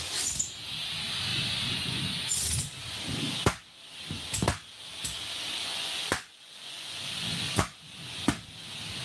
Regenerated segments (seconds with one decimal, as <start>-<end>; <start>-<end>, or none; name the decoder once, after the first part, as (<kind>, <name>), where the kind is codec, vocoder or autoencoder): 1.3-2.0 (vocoder, Vocos); 5.6-8.3